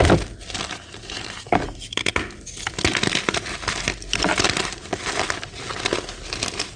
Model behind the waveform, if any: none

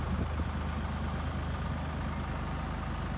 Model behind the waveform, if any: none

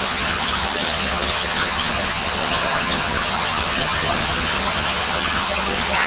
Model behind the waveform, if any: vocoder, HiFi-GAN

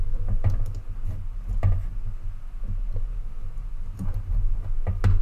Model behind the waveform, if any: none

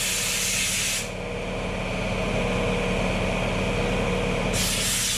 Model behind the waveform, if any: none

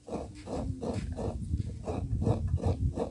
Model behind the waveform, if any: none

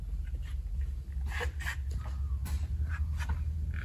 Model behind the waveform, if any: none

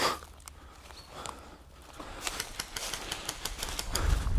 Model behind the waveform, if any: none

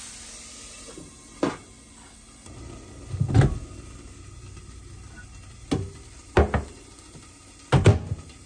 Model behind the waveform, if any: none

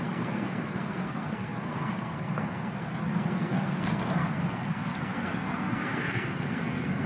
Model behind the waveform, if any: codec, SNAC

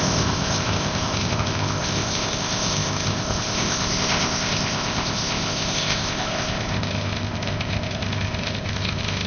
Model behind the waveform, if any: codec, ZipCodec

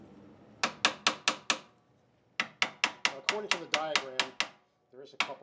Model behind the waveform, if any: none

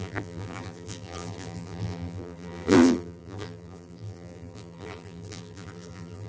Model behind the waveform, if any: vocoder, BigVGAN v2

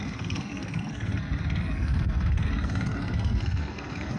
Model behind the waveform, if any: codec, SNAC